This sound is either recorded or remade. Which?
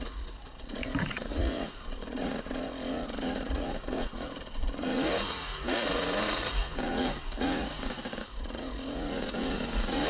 remade